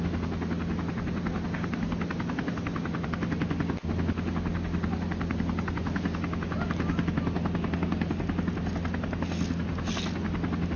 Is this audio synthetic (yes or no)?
no